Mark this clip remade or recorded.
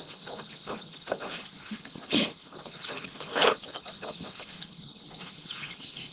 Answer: remade